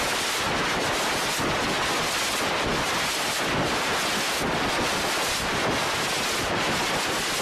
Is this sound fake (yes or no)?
no